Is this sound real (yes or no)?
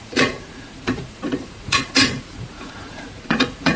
no